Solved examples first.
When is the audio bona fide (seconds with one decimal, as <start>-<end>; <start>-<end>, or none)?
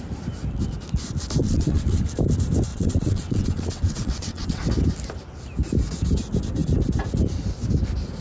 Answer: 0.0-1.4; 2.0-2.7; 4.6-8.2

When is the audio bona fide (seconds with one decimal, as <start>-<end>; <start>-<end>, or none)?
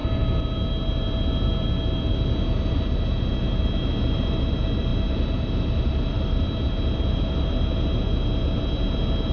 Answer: 0.0-9.3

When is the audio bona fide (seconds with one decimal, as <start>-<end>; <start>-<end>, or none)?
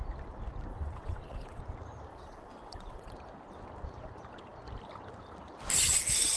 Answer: 0.0-0.7; 1.6-2.1; 3.1-6.4